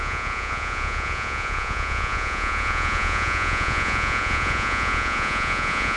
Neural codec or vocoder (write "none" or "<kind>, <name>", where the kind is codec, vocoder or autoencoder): vocoder, Vocos